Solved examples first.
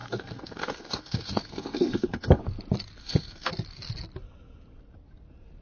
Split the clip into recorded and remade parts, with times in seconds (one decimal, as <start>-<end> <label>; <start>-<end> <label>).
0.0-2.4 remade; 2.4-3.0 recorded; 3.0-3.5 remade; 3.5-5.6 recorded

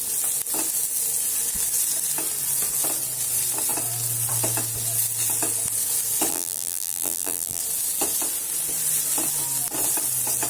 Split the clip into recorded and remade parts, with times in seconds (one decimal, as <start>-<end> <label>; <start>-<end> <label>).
0.0-6.3 recorded; 6.3-7.6 remade; 7.6-10.5 recorded

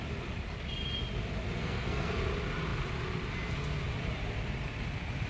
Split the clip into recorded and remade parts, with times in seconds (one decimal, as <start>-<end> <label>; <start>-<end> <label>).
0.0-1.6 recorded; 1.6-2.1 remade; 2.1-5.3 recorded

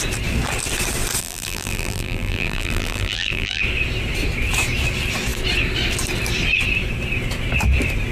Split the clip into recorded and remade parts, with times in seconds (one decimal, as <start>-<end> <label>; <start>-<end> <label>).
0.0-1.2 recorded; 1.2-3.6 remade; 3.6-8.1 recorded

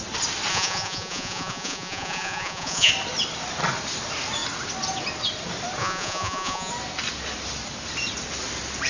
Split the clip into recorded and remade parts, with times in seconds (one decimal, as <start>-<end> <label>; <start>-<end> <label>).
0.0-0.5 recorded; 0.5-2.9 remade; 2.9-5.8 recorded; 5.8-6.7 remade; 6.7-8.9 recorded

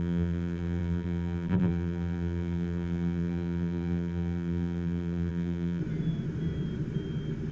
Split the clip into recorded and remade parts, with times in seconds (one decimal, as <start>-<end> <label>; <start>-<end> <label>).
0.0-5.8 remade; 5.8-7.5 recorded

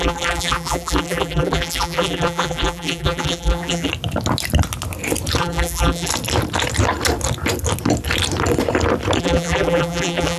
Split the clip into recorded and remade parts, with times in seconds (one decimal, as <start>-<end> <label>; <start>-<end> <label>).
0.0-3.9 remade; 3.9-5.4 recorded; 5.4-6.1 remade; 6.1-9.2 recorded; 9.2-10.4 remade

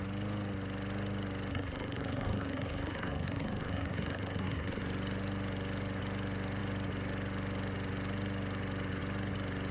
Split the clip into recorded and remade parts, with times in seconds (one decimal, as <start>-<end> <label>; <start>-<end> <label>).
0.0-1.5 recorded; 1.5-4.8 remade; 4.8-9.7 recorded